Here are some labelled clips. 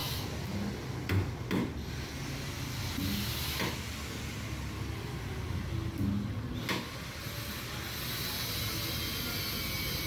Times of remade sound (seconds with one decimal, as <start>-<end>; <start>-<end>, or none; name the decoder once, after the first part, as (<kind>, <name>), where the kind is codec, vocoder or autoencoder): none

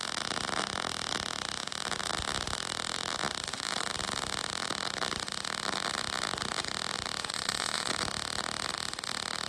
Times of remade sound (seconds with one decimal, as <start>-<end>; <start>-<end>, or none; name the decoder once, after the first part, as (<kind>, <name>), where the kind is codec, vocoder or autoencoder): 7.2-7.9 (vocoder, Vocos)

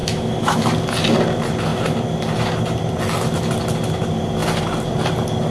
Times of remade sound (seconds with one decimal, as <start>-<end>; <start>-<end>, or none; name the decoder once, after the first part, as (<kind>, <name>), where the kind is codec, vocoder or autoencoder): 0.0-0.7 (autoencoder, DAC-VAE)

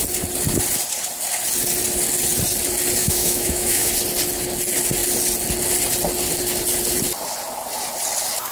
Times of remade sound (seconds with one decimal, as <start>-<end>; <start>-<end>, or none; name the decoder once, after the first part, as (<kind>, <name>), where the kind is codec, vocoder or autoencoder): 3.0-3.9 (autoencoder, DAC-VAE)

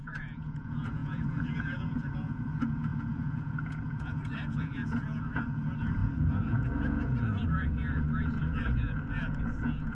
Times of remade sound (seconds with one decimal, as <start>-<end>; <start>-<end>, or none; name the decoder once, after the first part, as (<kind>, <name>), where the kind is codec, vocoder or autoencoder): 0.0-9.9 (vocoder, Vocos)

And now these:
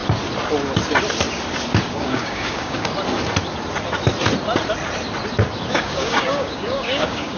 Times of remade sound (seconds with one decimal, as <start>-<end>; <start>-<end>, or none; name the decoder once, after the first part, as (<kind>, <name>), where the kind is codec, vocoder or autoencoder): 1.9-2.9 (codec, DAC); 5.7-7.4

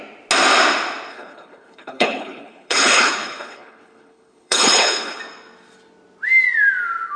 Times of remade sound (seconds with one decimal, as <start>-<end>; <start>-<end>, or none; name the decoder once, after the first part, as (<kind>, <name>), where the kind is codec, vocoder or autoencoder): 1.1-5.2 (codec, HILCodec)